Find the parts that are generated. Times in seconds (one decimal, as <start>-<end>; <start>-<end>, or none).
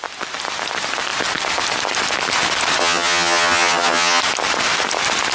2.8-4.2